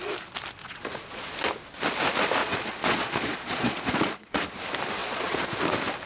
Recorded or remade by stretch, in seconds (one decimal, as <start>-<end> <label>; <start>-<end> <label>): 0.0-0.6 recorded; 0.6-1.2 remade; 1.2-2.4 recorded; 2.4-4.4 remade; 4.4-5.0 recorded; 5.0-5.6 remade; 5.6-6.1 recorded